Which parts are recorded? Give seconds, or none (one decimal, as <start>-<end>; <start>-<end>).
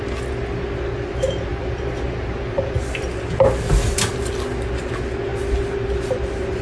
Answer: 0.0-6.6